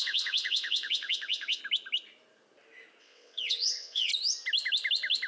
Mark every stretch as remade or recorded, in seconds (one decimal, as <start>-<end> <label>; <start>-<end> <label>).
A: 0.0-1.6 remade; 1.6-3.0 recorded; 3.0-4.1 remade; 4.1-5.3 recorded